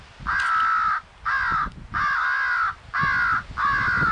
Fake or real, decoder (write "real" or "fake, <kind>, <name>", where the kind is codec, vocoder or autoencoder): real